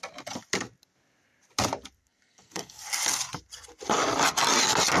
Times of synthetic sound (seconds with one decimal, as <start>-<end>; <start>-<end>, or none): 2.0-2.8